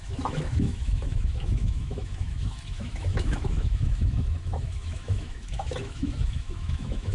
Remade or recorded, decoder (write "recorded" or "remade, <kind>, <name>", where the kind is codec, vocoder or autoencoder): remade, autoencoder, DAC-VAE